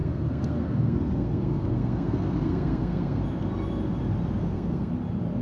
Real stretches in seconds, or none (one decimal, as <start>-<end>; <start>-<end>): 3.2-4.4; 4.9-5.4